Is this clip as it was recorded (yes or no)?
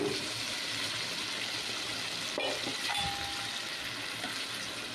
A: yes